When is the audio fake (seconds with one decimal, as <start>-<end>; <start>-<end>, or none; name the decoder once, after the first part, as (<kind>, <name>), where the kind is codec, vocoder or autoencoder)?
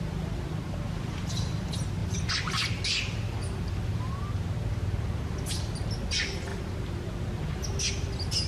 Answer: 2.0-4.1 (vocoder, BigVGAN v2)